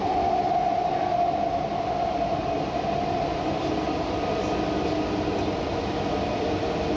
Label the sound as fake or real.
real